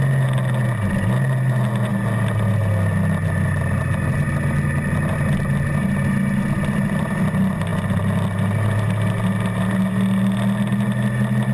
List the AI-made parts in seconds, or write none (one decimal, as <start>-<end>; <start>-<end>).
none